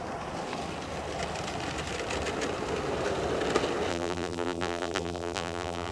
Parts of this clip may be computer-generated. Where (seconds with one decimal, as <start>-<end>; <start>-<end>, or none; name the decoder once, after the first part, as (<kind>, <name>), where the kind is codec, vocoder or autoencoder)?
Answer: 3.9-5.9 (vocoder, BigVGAN v2)